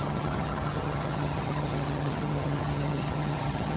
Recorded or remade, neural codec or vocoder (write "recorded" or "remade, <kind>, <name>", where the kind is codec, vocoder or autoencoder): remade, vocoder, HiFi-GAN